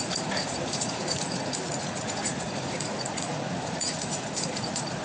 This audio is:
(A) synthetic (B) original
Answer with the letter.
A